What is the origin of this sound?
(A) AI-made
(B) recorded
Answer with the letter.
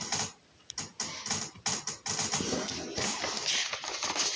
B